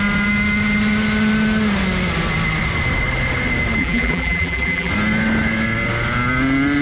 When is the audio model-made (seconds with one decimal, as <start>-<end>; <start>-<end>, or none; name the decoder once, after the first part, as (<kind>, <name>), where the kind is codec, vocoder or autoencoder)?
3.8-4.9 (vocoder, BigVGAN v2)